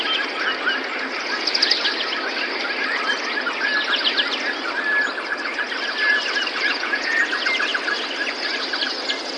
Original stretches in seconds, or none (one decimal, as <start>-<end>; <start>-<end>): 0.0-6.7; 7.2-9.4